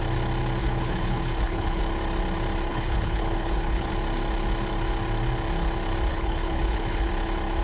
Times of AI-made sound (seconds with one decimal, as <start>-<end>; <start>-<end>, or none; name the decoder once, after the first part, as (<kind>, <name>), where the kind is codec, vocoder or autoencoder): 0.6-1.8 (codec, HILCodec); 2.7-3.9; 6.1-7.1